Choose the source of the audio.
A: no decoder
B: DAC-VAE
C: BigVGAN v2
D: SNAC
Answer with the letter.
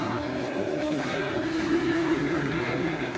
D